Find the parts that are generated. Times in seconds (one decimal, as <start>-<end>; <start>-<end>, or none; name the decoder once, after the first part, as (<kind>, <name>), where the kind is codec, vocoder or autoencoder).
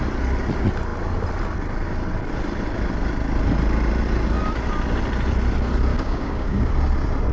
5.9-6.7 (codec, DAC)